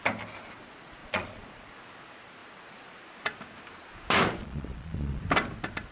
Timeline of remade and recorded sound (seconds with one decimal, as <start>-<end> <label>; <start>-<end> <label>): 0.0-1.0 recorded; 1.0-1.7 remade; 1.7-4.4 recorded; 4.4-5.2 remade; 5.2-5.9 recorded